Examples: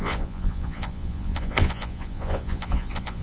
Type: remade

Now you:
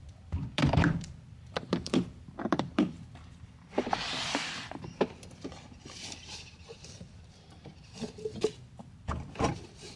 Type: remade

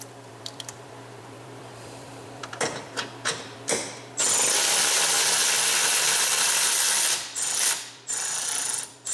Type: remade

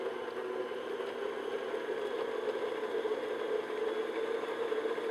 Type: recorded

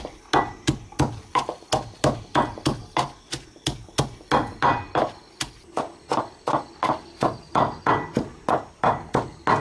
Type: recorded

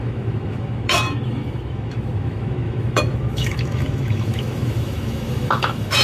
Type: remade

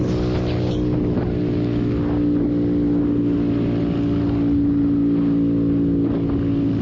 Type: recorded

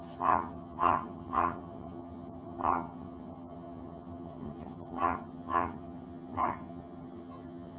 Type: remade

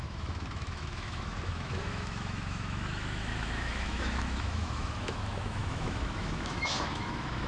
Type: remade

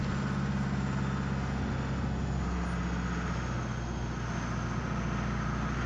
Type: recorded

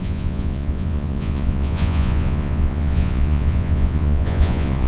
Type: remade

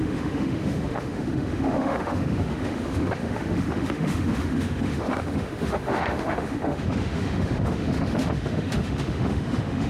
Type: remade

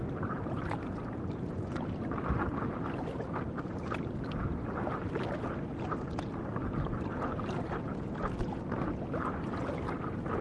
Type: recorded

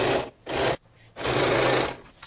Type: recorded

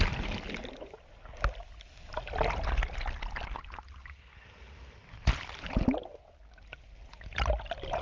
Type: recorded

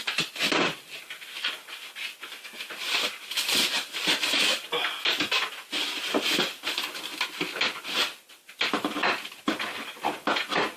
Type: recorded